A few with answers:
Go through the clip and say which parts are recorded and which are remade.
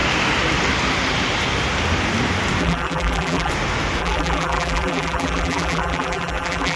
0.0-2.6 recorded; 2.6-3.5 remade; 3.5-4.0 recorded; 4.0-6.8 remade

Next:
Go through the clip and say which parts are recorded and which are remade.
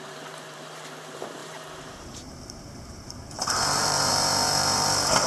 0.0-5.3 remade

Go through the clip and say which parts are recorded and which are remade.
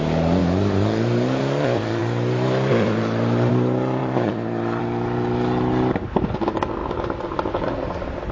0.0-4.0 recorded; 4.0-4.8 remade; 4.8-8.3 recorded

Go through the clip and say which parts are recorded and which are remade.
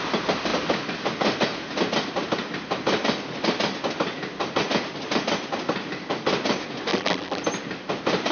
0.0-6.9 recorded; 6.9-7.4 remade; 7.4-8.3 recorded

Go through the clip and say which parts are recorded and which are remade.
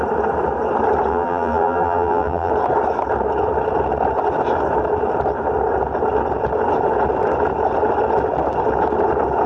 0.0-1.1 recorded; 1.1-2.5 remade; 2.5-9.5 recorded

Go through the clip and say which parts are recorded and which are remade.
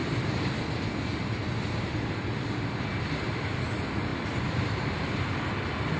0.0-0.5 remade; 0.5-6.0 recorded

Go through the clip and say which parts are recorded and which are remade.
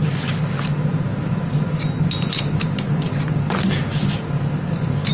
0.0-5.1 recorded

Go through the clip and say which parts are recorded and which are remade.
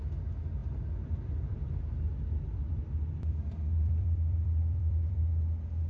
0.0-0.6 recorded; 0.6-1.8 remade; 1.8-2.3 recorded; 2.3-5.2 remade; 5.2-5.9 recorded